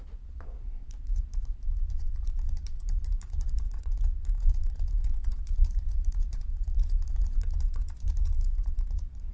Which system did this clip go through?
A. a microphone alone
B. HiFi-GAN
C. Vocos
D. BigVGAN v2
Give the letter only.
C